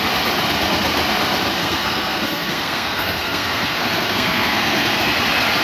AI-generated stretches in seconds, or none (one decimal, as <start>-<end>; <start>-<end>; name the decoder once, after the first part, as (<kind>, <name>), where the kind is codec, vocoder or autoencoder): 1.6-5.0 (codec, SNAC)